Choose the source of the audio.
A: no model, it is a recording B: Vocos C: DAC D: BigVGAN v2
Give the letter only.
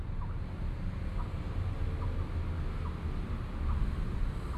A